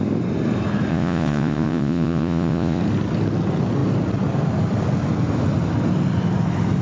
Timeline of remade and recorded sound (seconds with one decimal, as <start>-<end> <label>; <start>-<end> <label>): 0.0-0.9 recorded; 0.9-2.8 remade; 2.8-6.8 recorded